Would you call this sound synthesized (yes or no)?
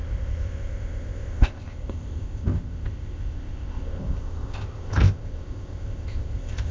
yes